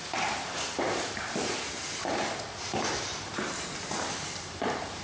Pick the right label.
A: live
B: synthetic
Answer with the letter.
B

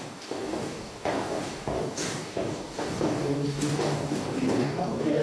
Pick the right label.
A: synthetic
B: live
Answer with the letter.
A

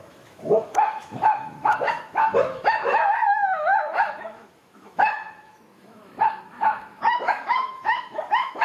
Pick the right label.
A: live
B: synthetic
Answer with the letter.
B